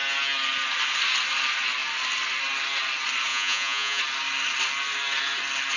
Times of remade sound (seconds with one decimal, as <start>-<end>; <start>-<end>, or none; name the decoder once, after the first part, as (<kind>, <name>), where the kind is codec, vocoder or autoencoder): 3.3-4.0 (vocoder, Vocos)